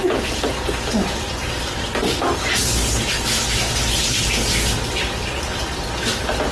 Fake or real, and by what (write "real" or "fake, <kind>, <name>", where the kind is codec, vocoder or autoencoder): real